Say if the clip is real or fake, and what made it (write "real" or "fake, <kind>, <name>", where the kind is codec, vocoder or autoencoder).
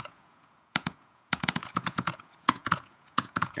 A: fake, vocoder, Vocos